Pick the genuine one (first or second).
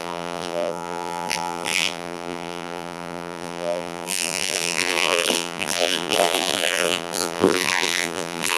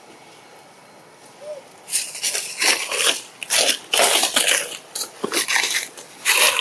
second